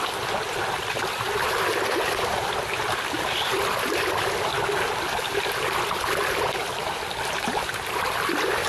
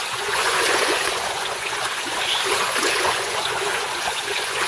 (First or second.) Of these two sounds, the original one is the first